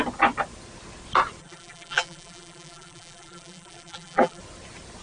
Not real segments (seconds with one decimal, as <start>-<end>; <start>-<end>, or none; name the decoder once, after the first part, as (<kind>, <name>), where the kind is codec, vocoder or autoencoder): 1.4-4.4 (vocoder, BigVGAN v2)